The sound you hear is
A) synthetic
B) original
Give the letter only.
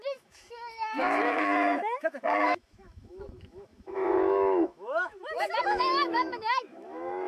A